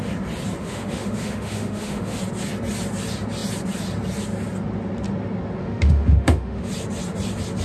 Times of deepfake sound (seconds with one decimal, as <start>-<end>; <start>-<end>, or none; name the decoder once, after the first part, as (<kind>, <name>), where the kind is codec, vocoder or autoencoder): 0.6-2.2 (autoencoder, DAC-VAE); 5.6-6.7